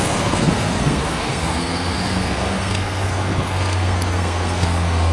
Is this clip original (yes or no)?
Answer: no